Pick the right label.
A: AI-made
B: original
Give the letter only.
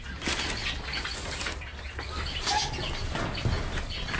B